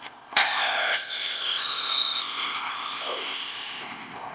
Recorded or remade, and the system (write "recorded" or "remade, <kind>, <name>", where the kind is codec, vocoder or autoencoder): remade, codec, ZipCodec